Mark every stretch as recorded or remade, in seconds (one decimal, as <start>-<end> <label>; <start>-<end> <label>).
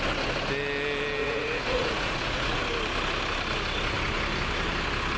0.0-1.2 recorded; 1.2-2.6 remade; 2.6-5.2 recorded